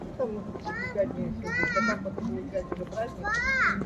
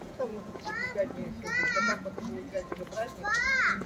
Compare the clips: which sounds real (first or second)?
first